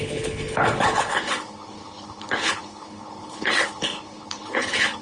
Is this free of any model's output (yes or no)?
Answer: no